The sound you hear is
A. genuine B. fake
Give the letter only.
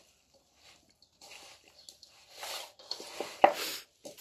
A